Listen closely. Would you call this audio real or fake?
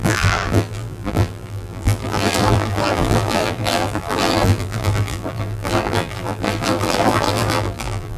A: fake